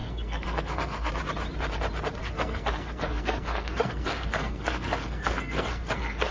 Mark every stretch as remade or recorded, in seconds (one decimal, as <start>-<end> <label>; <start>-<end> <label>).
0.0-1.1 remade; 1.1-2.2 recorded; 2.2-6.3 remade